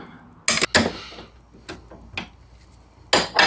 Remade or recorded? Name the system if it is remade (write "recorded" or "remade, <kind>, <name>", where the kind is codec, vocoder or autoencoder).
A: recorded